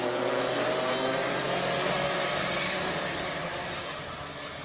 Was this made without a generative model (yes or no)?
yes